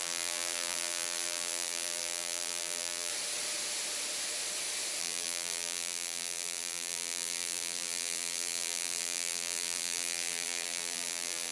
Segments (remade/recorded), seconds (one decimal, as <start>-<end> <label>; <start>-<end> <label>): 0.0-3.1 remade; 3.1-5.0 recorded; 5.0-11.5 remade